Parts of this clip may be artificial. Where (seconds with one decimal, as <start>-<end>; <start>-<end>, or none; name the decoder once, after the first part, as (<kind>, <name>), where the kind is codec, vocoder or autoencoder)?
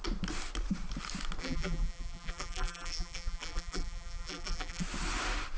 1.4-4.8 (vocoder, BigVGAN v2)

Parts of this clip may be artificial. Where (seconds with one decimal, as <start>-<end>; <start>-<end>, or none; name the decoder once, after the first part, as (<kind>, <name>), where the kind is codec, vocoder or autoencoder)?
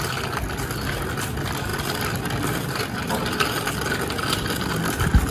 none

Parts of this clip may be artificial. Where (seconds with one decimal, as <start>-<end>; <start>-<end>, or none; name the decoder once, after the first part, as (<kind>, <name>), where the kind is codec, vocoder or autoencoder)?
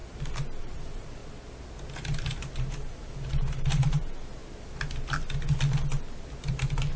0.6-1.2 (vocoder, BigVGAN v2); 2.4-4.4; 6.5-7.0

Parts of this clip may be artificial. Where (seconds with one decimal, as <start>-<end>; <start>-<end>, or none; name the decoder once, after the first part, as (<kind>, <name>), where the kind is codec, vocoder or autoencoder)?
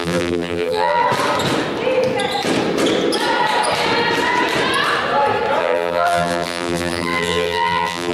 0.0-1.0 (vocoder, BigVGAN v2); 5.6-8.1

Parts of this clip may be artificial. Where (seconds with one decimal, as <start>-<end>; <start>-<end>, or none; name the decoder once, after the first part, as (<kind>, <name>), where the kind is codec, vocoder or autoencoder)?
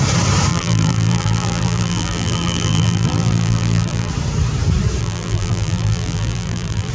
0.5-4.1 (vocoder, BigVGAN v2); 5.0-6.9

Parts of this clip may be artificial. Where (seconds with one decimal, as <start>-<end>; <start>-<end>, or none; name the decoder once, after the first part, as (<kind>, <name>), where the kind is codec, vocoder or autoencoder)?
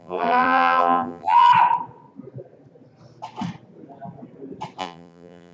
0.0-1.5 (vocoder, BigVGAN v2); 4.8-5.5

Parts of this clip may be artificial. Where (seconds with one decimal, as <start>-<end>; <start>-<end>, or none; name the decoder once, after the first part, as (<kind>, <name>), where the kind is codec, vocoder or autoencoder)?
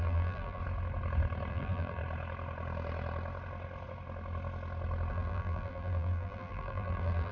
0.0-0.6 (vocoder, BigVGAN v2); 1.5-2.0; 5.1-7.3